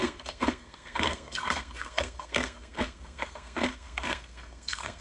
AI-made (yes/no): yes